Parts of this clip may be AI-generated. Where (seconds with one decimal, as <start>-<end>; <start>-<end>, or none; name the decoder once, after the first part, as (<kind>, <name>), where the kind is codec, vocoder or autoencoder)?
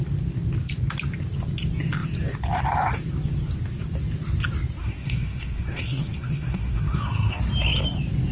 4.8-7.4 (codec, SNAC)